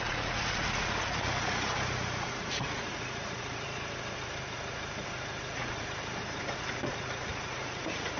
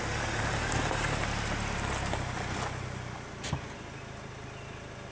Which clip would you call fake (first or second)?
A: first